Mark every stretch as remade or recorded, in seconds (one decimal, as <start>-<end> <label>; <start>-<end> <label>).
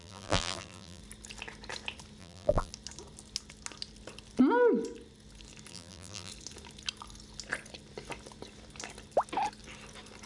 0.0-1.0 remade; 1.0-2.2 recorded; 2.2-2.7 remade; 2.7-5.7 recorded; 5.7-6.3 remade; 6.3-10.3 recorded